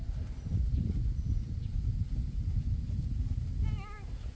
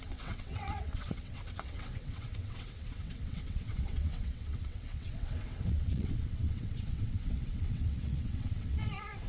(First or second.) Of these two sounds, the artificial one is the second